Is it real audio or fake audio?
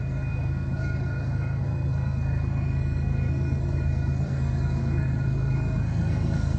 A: fake